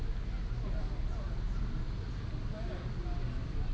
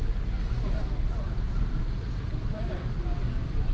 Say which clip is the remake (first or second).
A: second